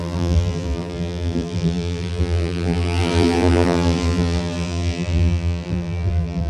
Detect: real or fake fake